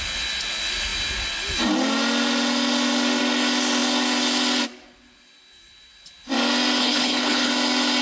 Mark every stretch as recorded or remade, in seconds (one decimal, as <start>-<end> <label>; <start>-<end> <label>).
0.0-6.8 recorded; 6.8-7.5 remade; 7.5-8.0 recorded

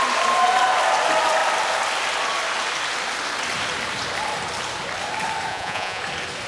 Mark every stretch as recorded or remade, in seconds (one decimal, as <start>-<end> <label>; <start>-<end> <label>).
0.0-5.5 recorded; 5.5-6.0 remade; 6.0-6.5 recorded

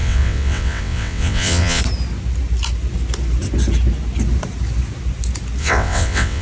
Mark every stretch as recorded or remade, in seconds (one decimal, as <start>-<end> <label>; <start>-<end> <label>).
0.0-1.8 remade; 1.8-5.6 recorded; 5.6-6.4 remade

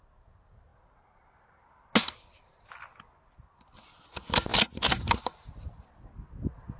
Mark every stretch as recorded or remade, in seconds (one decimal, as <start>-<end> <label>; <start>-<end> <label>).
0.0-6.8 recorded

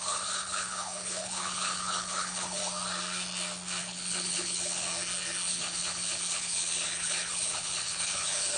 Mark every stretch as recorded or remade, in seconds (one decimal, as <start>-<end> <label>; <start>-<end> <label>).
0.0-2.6 remade; 2.6-3.8 recorded; 3.8-4.9 remade; 4.9-5.5 recorded; 5.5-8.6 remade

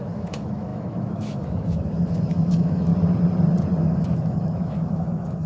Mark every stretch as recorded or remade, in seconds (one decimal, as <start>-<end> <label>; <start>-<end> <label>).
0.0-2.9 remade; 2.9-3.8 recorded; 3.8-5.5 remade

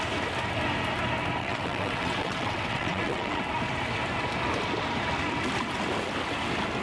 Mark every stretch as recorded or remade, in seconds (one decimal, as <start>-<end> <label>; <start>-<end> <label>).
0.0-1.4 recorded; 1.4-3.4 remade; 3.4-6.8 recorded

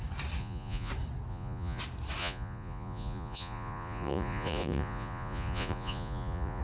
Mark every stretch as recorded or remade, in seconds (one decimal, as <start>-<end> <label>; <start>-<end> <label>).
0.0-0.4 recorded; 0.4-0.9 remade; 0.9-1.3 recorded; 1.3-1.8 remade; 1.8-2.2 recorded; 2.2-6.6 remade